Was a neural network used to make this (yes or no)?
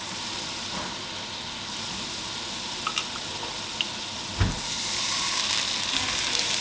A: no